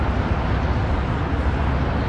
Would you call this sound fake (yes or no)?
no